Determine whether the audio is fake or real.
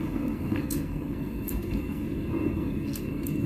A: fake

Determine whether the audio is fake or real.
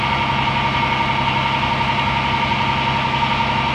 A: real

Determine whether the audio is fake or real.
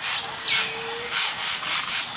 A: real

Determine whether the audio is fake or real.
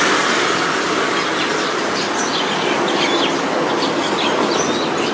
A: real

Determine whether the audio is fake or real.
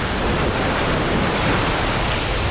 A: fake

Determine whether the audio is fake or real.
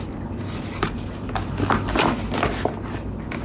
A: real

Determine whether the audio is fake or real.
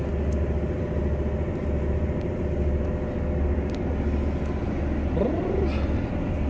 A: real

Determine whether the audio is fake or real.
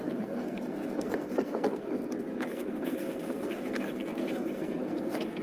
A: fake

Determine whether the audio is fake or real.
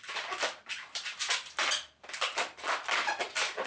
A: fake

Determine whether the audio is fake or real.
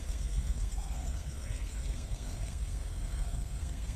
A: fake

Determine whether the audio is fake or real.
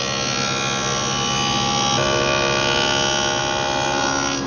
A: real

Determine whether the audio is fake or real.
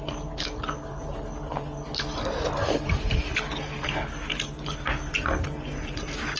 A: real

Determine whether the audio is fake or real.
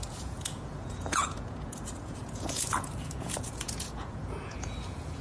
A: fake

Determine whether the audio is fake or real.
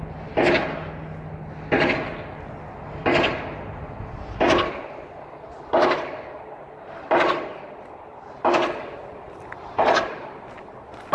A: real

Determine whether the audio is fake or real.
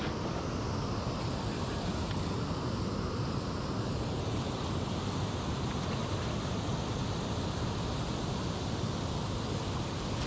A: real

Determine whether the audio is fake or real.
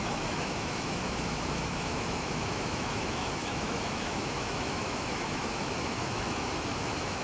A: fake